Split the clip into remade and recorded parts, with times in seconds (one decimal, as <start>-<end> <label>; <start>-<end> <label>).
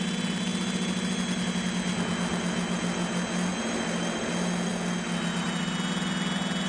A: 0.0-6.7 recorded